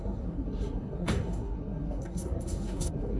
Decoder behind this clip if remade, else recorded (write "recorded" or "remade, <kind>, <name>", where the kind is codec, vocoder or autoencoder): remade, codec, SNAC